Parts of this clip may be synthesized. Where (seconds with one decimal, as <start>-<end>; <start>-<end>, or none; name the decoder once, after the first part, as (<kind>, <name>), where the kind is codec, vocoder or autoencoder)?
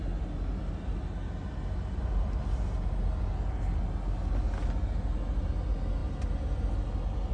none